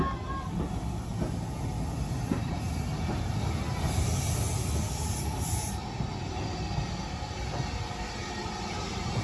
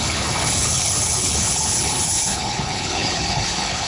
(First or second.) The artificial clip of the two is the second